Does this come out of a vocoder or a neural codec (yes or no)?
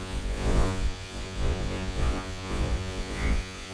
yes